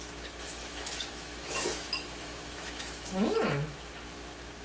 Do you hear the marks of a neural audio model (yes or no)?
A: yes